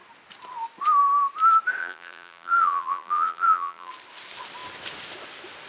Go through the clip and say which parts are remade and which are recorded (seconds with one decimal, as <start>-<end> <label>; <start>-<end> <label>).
0.0-1.8 recorded; 1.8-3.9 remade; 3.9-5.7 recorded